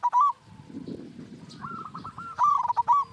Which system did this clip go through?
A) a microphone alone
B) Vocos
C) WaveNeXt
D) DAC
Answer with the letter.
A